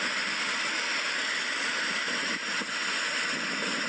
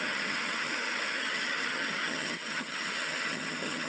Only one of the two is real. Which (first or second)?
first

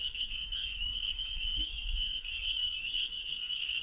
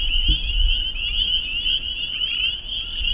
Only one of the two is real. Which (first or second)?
second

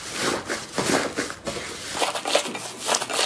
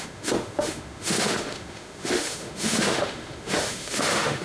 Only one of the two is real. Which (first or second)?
first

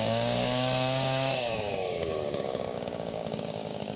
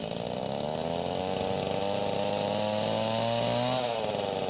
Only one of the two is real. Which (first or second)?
second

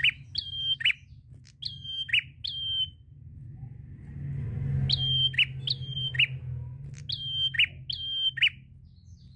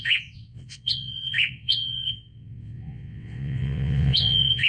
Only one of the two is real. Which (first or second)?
first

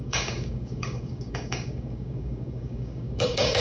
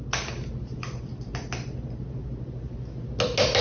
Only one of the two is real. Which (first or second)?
second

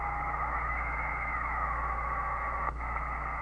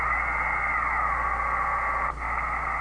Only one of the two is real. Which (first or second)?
second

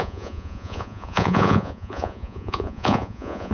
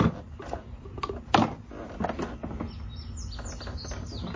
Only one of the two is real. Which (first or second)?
second